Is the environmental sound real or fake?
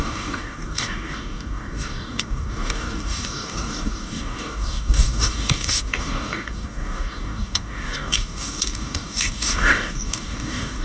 fake